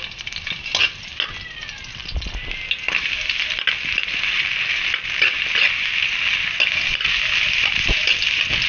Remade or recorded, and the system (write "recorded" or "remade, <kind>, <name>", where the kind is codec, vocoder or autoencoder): recorded